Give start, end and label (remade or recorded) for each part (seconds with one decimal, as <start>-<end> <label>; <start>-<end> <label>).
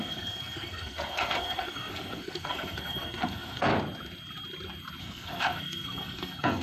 0.0-3.7 remade; 3.7-5.0 recorded; 5.0-6.6 remade